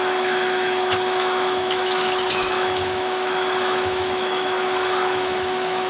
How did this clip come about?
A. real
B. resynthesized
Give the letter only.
B